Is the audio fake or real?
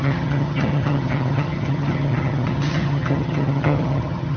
fake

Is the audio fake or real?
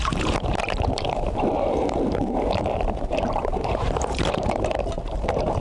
fake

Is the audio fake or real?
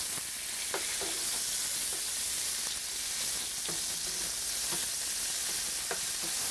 real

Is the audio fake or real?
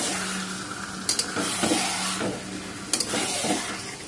real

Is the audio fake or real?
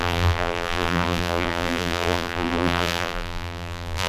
fake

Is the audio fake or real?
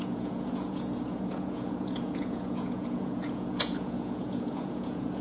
fake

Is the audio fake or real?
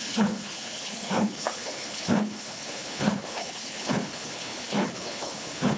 fake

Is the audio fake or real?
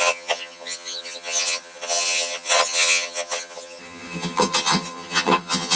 fake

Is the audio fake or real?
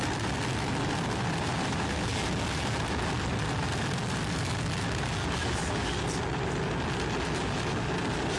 real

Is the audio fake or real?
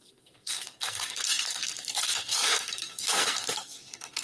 fake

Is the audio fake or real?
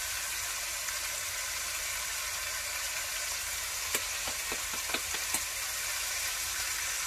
real